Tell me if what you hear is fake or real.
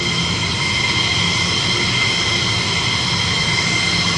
real